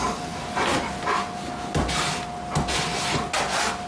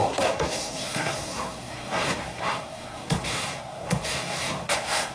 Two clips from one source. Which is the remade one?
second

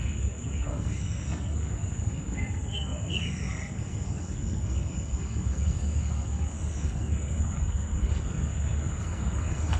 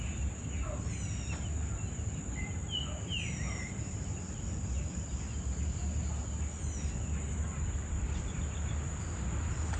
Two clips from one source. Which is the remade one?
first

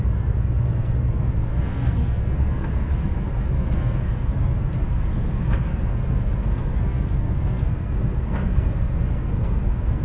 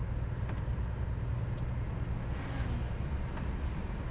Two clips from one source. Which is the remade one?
first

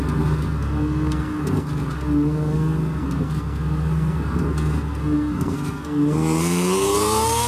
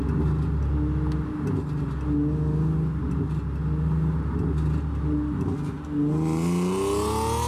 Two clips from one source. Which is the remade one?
first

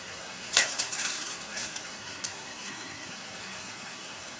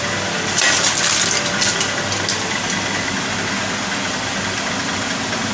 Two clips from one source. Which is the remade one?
first